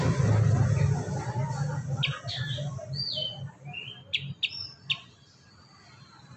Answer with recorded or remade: recorded